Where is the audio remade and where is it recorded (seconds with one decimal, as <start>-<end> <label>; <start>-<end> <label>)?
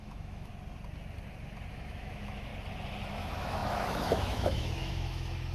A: 0.0-0.5 remade; 0.5-1.7 recorded; 1.7-2.5 remade; 2.5-3.1 recorded; 3.1-5.5 remade